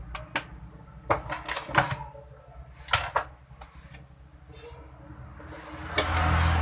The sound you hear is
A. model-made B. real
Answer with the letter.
B